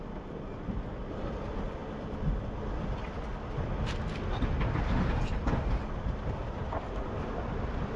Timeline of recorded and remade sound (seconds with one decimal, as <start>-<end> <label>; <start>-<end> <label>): 0.0-1.8 remade; 1.8-6.4 recorded; 6.4-8.0 remade